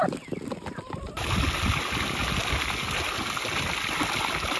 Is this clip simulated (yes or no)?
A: no